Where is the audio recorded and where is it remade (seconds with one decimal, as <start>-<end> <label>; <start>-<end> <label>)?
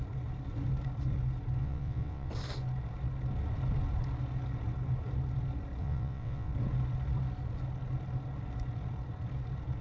0.0-1.6 recorded; 1.6-2.3 remade; 2.3-5.8 recorded; 5.8-6.5 remade; 6.5-9.8 recorded